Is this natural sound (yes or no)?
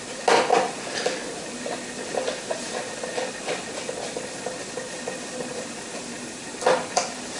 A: yes